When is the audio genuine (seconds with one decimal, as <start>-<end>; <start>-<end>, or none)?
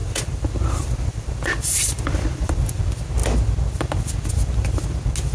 2.8-5.3